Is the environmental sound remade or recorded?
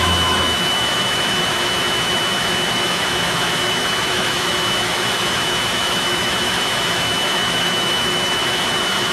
remade